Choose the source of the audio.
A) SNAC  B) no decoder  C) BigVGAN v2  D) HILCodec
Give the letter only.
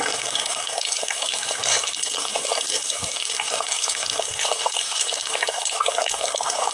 A